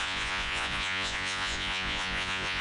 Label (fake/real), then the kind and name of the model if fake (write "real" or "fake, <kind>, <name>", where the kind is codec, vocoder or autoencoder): fake, vocoder, Vocos